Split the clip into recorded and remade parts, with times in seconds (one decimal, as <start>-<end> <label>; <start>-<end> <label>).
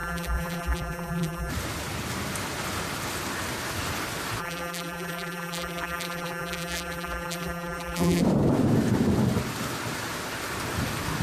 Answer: 0.0-1.5 remade; 1.5-4.4 recorded; 4.4-8.2 remade; 8.2-11.2 recorded